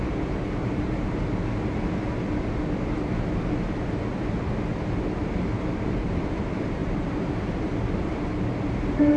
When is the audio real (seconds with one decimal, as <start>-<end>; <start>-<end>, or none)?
1.4-5.7